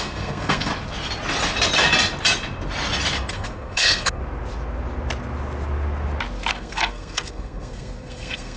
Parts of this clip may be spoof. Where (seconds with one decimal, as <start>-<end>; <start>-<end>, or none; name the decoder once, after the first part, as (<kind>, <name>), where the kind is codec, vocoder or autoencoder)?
0.0-0.7 (codec, SNAC); 3.3-4.2; 6.5-8.6